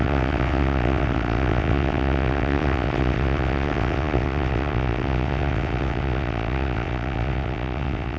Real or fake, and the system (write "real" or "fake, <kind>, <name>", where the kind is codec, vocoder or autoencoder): fake, vocoder, WaveNeXt